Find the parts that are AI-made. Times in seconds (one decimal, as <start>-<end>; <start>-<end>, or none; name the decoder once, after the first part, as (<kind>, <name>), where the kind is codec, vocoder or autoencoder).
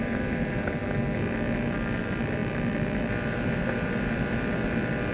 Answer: none